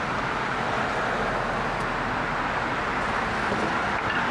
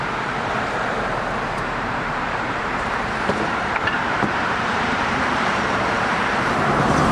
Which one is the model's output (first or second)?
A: second